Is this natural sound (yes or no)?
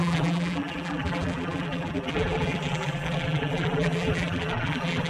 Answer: no